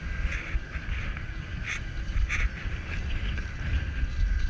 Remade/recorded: recorded